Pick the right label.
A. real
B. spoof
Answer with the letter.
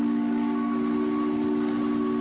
A